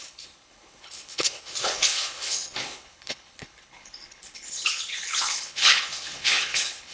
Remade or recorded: remade